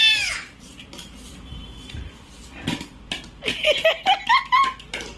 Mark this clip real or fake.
real